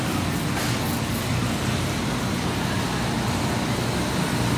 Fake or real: real